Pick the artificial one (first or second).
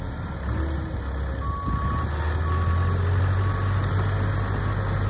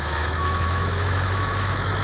second